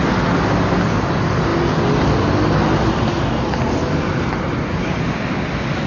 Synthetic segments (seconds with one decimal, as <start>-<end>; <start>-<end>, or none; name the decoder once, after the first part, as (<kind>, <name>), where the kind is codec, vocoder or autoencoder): none